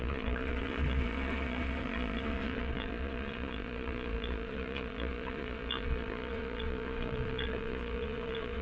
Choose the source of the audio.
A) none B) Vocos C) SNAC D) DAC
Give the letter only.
B